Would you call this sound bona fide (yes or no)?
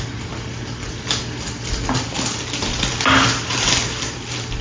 yes